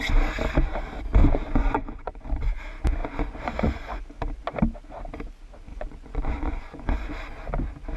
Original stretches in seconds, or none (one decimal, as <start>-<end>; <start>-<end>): 0.0-1.2; 2.6-3.0; 4.0-5.7; 7.1-8.0